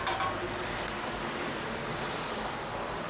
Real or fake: real